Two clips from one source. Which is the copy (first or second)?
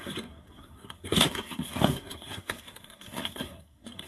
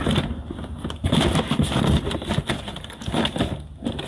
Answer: first